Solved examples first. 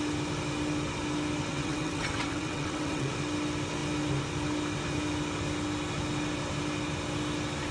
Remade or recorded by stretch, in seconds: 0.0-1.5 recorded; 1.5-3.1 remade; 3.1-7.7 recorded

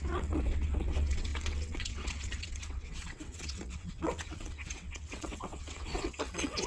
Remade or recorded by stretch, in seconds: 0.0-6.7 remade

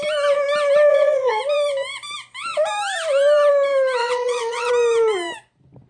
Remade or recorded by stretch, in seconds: 0.0-0.9 recorded; 0.9-1.4 remade; 1.4-4.0 recorded; 4.0-4.7 remade; 4.7-5.9 recorded

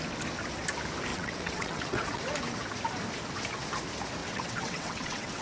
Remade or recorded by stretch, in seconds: 0.0-1.1 recorded; 1.1-2.2 remade; 2.2-4.2 recorded; 4.2-5.4 remade

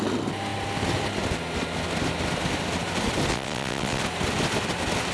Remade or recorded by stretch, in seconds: 0.0-3.3 recorded; 3.3-4.0 remade; 4.0-5.1 recorded

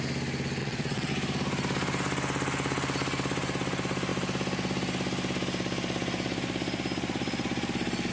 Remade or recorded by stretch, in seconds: 0.0-0.6 recorded; 0.6-1.1 remade; 1.1-8.1 recorded

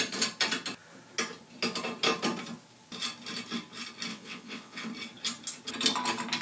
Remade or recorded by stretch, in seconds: 0.0-4.1 recorded; 4.1-4.9 remade; 4.9-6.4 recorded